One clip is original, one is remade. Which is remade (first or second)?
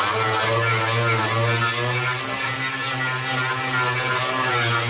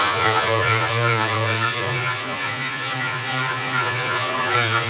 second